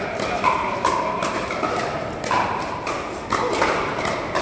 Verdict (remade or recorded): recorded